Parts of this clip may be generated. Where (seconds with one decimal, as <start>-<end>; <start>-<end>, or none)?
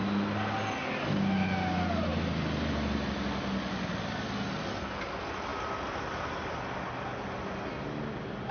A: none